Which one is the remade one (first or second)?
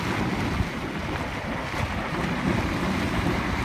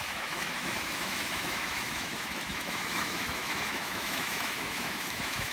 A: second